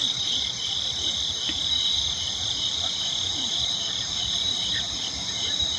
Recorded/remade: remade